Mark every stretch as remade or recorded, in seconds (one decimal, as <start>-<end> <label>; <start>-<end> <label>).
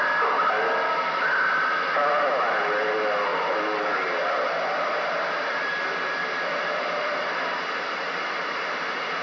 0.0-9.2 recorded